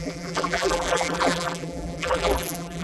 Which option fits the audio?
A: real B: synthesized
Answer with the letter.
B